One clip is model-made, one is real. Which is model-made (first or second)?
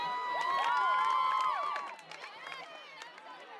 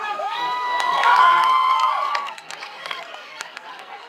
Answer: second